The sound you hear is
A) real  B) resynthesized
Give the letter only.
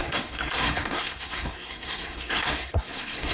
B